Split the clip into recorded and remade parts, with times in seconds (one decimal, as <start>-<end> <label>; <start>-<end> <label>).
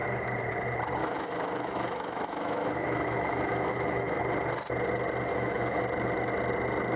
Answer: 0.0-1.0 recorded; 1.0-4.2 remade; 4.2-5.3 recorded; 5.3-5.8 remade; 5.8-7.0 recorded